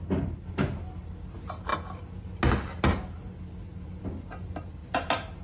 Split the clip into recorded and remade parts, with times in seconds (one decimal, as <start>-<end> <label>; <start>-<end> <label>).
0.0-4.8 recorded; 4.8-5.4 remade